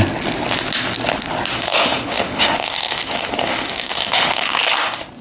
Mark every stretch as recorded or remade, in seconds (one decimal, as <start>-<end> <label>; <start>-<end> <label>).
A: 0.0-1.5 recorded; 1.5-4.6 remade; 4.6-5.2 recorded